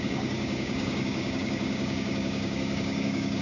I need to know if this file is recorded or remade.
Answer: remade